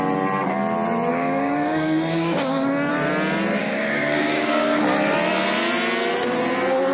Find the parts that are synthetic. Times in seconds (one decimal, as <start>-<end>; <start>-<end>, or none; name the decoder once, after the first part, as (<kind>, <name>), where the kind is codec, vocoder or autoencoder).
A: 1.1-2.9 (codec, DAC); 3.6-4.8